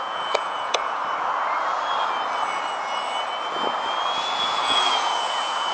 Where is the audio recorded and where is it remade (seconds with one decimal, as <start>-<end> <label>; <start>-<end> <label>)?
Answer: 0.0-1.0 remade; 1.0-4.4 recorded; 4.4-5.7 remade